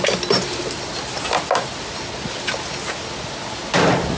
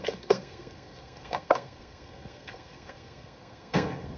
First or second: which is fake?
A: second